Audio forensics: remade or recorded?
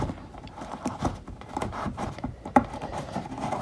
remade